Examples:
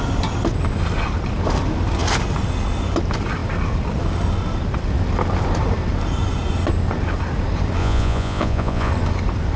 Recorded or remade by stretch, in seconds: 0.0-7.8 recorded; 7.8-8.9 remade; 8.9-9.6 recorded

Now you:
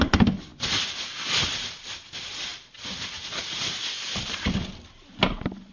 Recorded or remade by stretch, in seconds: 0.0-2.5 recorded; 2.5-4.6 remade; 4.6-5.7 recorded

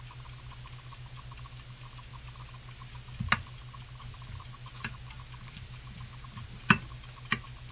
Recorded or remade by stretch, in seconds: 0.0-7.7 recorded